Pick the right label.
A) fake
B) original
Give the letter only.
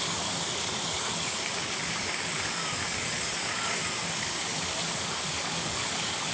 A